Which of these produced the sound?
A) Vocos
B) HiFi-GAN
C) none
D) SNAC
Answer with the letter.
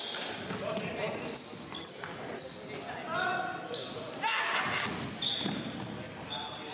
C